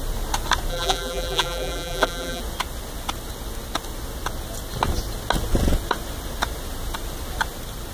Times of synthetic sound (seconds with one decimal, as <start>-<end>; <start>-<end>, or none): 0.7-2.4